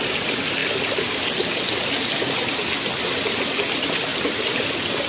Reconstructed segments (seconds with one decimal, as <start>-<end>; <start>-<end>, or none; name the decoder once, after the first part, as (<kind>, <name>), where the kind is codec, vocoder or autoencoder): none